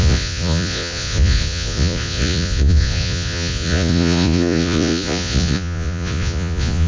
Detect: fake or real fake